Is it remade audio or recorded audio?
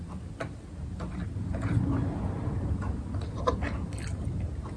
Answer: recorded